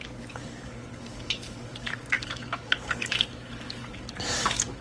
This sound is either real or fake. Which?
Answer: fake